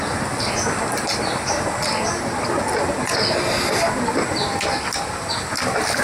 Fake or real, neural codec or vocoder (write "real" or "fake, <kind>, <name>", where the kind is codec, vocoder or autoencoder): real